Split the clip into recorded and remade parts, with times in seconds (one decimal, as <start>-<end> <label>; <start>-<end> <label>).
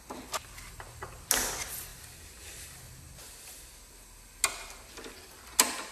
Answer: 0.0-5.9 recorded